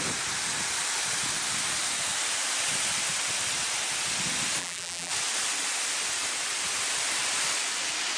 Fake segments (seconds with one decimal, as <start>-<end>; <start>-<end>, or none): 4.6-5.1